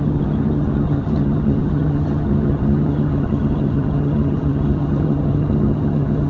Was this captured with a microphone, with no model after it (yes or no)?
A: no